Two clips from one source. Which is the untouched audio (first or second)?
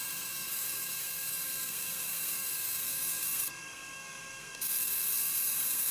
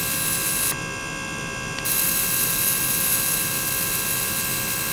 second